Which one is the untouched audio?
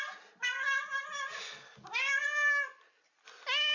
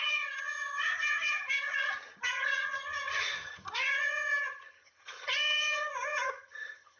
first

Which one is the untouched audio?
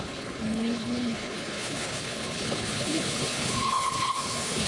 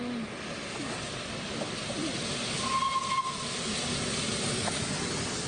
second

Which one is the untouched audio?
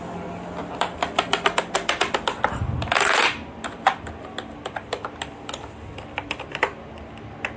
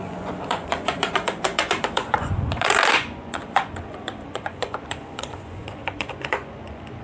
first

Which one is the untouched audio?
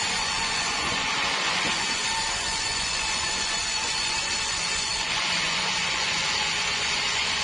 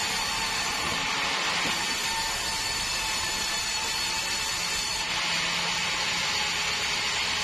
second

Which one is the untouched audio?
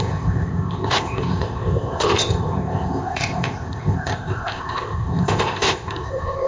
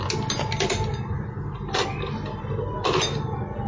second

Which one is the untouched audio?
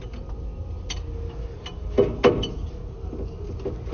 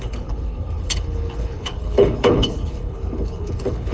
first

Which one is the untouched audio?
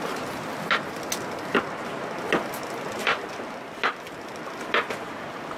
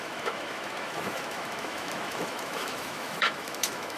first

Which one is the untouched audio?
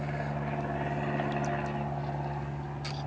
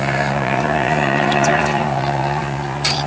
first